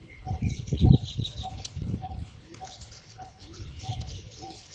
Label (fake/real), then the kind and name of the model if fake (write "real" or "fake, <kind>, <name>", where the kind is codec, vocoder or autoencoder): fake, codec, HILCodec